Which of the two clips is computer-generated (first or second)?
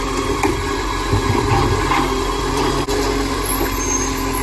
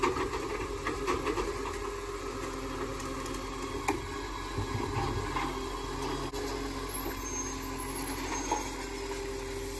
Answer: first